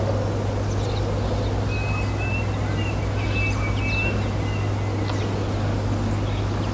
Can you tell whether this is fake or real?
real